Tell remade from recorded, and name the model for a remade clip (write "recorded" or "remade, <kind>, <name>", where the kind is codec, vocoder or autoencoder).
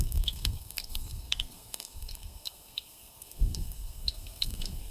remade, codec, SNAC